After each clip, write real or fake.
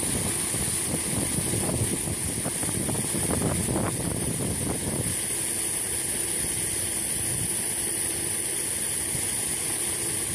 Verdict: real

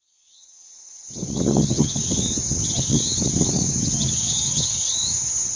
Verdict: fake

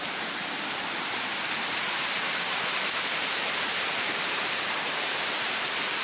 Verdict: fake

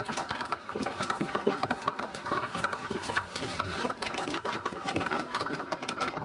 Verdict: fake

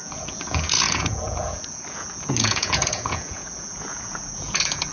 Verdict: fake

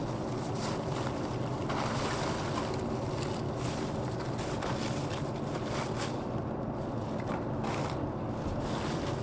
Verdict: real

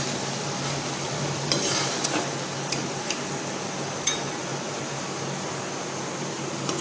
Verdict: real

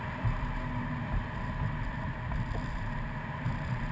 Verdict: fake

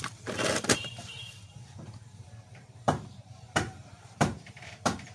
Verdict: fake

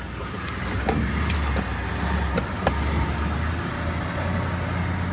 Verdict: real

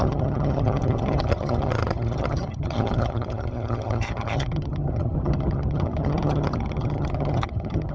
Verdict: fake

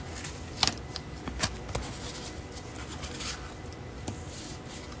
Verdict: real